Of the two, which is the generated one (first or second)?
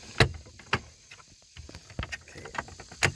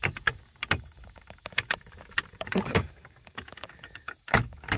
second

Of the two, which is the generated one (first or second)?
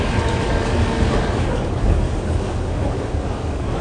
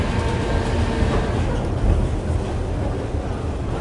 first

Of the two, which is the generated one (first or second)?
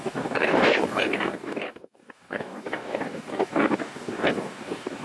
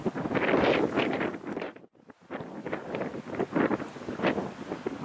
first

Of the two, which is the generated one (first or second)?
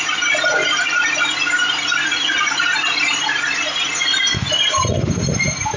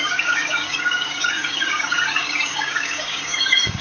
second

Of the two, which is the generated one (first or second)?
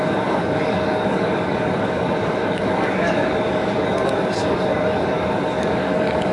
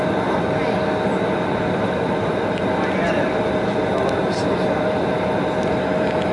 first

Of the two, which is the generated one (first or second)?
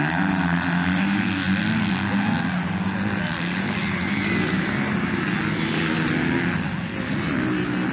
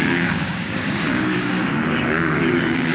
second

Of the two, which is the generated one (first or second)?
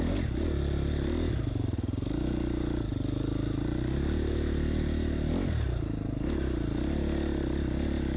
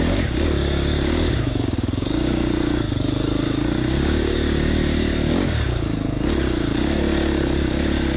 second